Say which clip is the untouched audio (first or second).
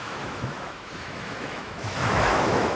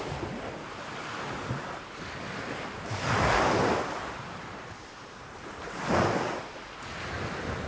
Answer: second